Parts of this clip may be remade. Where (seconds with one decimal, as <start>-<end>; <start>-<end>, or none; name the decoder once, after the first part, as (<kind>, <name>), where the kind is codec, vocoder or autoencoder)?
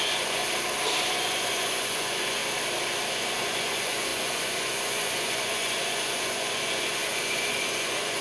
0.0-0.4 (vocoder, Vocos); 1.0-2.4; 3.1-8.2